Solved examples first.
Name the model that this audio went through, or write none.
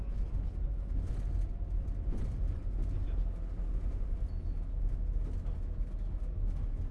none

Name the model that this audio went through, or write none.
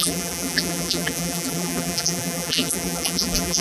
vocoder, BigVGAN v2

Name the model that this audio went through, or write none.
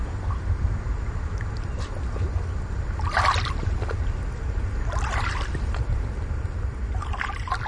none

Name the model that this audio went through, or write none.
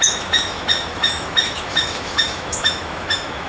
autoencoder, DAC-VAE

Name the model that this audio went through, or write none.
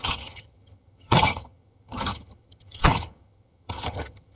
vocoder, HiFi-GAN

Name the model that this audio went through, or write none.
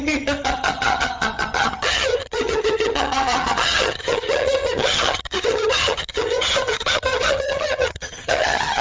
vocoder, HiFi-GAN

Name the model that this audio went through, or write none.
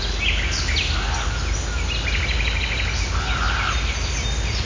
none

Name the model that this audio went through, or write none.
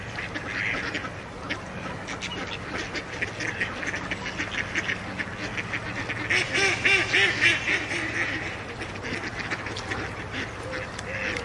none